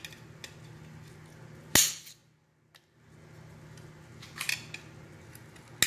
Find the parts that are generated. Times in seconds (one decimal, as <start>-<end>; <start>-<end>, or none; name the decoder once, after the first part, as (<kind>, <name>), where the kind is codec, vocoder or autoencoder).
none